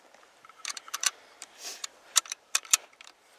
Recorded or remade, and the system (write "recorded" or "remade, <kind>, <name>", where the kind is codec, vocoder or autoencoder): remade, vocoder, BigVGAN v2